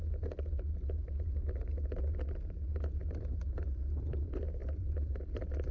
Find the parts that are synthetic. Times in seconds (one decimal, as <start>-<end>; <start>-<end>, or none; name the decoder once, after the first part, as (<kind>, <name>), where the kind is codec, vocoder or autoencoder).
4.6-5.7 (vocoder, BigVGAN v2)